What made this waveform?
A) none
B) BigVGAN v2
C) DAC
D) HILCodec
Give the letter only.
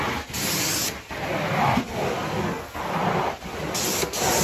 A